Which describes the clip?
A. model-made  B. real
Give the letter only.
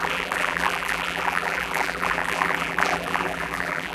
A